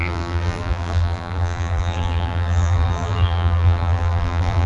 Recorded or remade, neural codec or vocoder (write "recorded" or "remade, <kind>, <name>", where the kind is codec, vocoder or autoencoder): remade, vocoder, BigVGAN v2